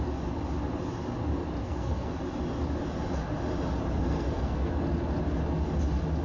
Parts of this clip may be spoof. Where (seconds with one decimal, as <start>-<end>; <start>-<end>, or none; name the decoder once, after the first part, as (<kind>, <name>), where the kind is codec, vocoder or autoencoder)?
1.6-2.2 (codec, SNAC); 4.0-4.7